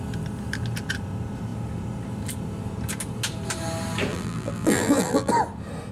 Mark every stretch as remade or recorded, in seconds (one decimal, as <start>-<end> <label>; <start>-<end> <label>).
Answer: 0.0-4.1 recorded; 4.1-5.3 remade; 5.3-5.9 recorded